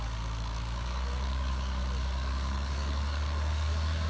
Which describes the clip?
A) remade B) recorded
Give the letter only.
A